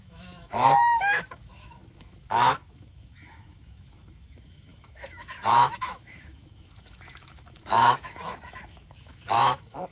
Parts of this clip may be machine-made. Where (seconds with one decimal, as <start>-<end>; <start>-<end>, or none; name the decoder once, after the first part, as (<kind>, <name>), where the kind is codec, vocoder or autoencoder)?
0.0-9.9 (autoencoder, DAC-VAE)